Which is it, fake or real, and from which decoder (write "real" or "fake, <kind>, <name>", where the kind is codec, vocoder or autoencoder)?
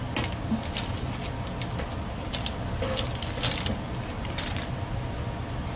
real